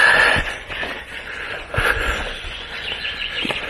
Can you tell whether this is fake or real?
fake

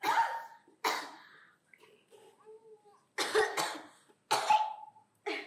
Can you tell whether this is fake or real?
real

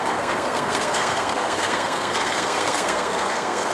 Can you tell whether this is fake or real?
fake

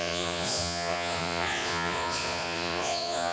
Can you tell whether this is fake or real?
fake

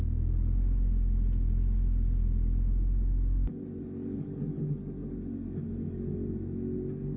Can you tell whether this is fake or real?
real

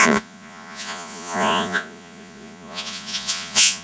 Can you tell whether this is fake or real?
fake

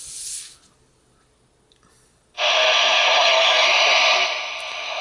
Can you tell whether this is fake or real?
real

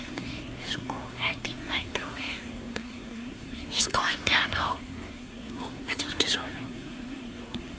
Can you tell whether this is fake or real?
fake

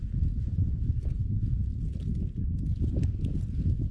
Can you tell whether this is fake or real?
real